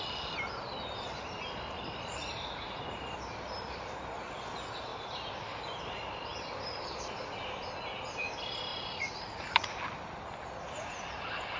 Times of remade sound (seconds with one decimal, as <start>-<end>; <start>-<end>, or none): 2.2-2.8; 8.7-9.8

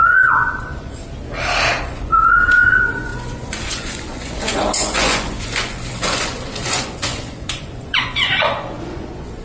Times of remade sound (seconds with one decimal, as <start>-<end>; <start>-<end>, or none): 0.0-1.0; 1.8-9.4